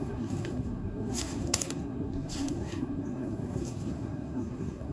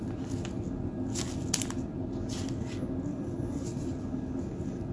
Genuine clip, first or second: second